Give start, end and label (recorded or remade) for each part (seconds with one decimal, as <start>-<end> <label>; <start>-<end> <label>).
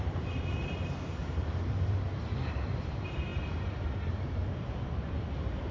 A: 0.0-5.7 remade